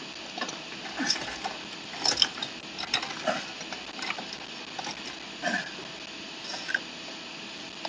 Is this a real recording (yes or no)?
yes